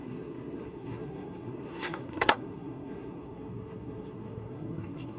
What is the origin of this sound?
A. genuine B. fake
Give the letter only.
B